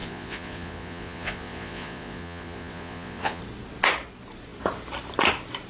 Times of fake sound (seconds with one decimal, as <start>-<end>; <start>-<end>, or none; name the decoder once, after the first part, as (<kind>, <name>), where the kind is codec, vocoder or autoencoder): 0.0-3.4 (vocoder, Vocos)